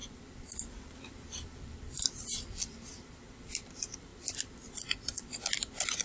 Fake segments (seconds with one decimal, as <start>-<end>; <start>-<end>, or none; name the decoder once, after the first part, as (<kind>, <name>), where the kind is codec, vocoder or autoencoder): 0.0-6.0 (vocoder, BigVGAN v2)

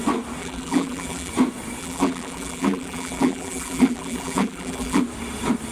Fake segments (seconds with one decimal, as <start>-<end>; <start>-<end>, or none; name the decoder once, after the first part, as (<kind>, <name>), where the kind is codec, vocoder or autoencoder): 0.4-1.3 (vocoder, BigVGAN v2); 1.8-5.0

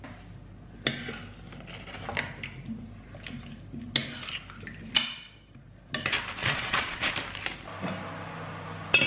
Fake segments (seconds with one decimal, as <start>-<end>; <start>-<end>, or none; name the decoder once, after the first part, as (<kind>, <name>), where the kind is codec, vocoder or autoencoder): 6.4-7.1 (vocoder, Vocos)

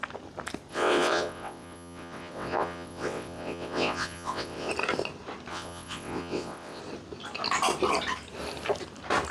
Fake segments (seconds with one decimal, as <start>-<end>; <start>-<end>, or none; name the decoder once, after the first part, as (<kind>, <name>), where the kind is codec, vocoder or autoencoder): 0.7-4.7 (vocoder, WaveNeXt); 5.5-6.8

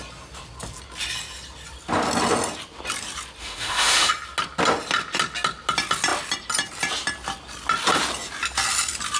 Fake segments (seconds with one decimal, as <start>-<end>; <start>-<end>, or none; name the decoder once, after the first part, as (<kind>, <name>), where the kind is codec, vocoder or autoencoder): 3.4-4.1 (autoencoder, DAC-VAE)

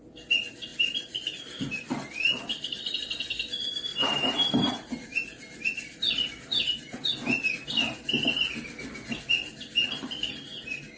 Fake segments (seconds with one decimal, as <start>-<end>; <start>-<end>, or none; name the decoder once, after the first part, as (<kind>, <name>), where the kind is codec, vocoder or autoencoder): 0.7-2.8 (vocoder, BigVGAN v2); 3.9-4.7